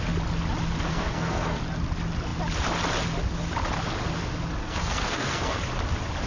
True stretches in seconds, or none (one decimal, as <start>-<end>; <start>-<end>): 0.0-0.9; 1.6-4.6; 5.6-6.3